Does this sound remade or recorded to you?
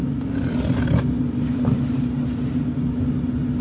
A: recorded